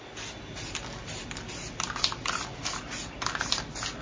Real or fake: real